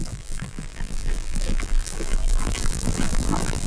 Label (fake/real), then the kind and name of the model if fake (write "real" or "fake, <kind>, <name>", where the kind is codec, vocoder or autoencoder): fake, vocoder, BigVGAN v2